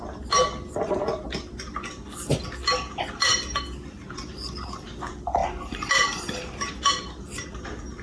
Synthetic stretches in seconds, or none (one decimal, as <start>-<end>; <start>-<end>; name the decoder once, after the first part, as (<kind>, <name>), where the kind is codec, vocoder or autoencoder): none